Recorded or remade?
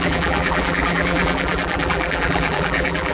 remade